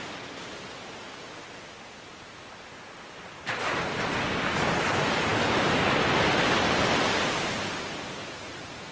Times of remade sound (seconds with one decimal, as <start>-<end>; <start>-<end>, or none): 8.2-8.9